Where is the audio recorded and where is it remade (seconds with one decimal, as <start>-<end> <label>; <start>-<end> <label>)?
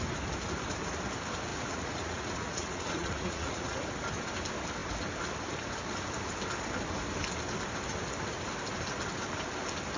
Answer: 0.0-1.5 recorded; 1.5-3.8 remade; 3.8-10.0 recorded